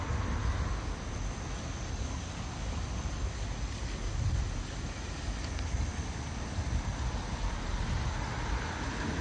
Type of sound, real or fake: real